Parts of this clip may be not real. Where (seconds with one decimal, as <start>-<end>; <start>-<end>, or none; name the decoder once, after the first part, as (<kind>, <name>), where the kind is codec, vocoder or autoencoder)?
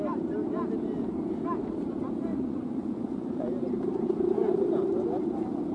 2.3-3.5 (vocoder, Vocos)